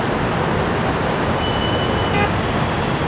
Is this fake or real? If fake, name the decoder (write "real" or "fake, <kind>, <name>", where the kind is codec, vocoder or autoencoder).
real